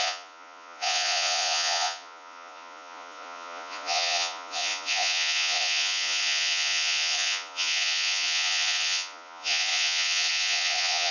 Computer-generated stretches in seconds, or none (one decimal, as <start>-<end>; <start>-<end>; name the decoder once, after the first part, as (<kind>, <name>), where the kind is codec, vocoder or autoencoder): 0.0-11.1 (vocoder, Vocos)